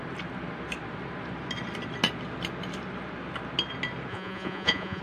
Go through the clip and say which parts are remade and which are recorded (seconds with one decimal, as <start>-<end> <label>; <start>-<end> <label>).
0.0-4.1 recorded; 4.1-5.0 remade